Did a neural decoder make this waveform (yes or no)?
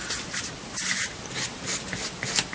no